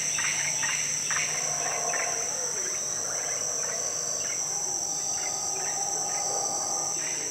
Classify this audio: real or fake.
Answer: real